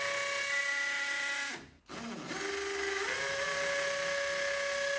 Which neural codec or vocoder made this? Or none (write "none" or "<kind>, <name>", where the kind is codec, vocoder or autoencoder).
none